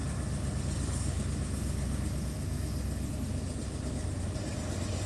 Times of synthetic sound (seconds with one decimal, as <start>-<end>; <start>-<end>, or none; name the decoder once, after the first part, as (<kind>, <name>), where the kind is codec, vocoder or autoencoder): none